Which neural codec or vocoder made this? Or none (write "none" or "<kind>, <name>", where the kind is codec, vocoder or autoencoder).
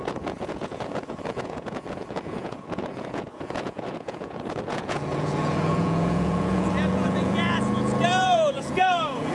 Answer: vocoder, Vocos